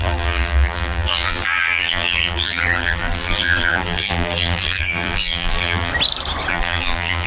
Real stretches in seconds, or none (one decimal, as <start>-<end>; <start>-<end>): 5.9-6.5